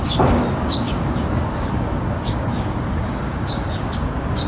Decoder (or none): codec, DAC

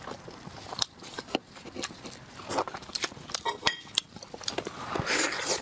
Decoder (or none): none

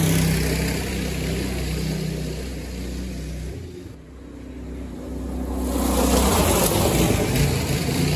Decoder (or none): none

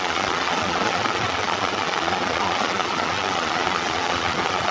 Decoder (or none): vocoder, Vocos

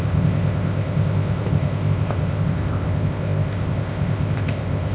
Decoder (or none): codec, ZipCodec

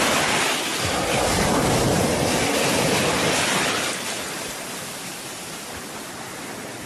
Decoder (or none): none